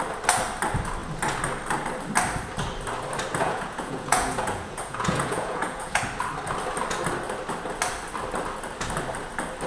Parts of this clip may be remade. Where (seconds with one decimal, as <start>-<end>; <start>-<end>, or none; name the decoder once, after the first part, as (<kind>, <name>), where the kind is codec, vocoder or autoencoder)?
3.4-6.0 (vocoder, Vocos)